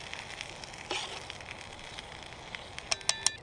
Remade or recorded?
recorded